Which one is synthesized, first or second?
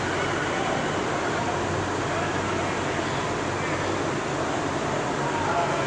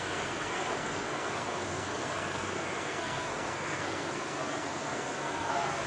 second